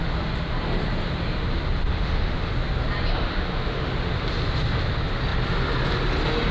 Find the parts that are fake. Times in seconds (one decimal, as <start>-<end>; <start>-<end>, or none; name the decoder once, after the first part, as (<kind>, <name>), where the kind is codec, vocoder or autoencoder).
1.9-2.5 (autoencoder, DAC-VAE); 3.1-3.9